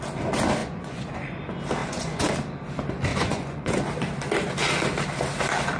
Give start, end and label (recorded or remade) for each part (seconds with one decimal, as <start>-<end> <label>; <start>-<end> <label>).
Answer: 0.0-0.6 recorded; 0.6-1.4 remade; 1.4-1.8 recorded; 1.8-2.3 remade; 2.3-3.1 recorded; 3.1-3.7 remade; 3.7-5.8 recorded